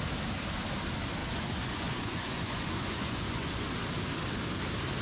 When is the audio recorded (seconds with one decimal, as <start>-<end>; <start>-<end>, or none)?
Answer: 0.0-1.2; 3.7-5.0